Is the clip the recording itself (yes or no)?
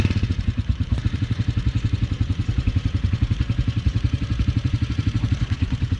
no